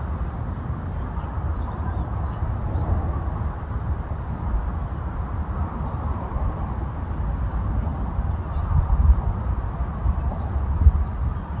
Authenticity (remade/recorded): recorded